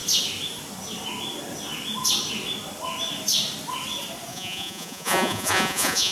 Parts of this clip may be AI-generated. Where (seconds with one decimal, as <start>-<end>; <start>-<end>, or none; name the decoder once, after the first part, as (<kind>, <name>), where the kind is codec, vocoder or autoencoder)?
4.3-6.1 (vocoder, Vocos)